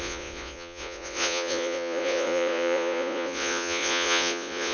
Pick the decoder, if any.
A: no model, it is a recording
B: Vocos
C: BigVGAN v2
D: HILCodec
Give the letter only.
B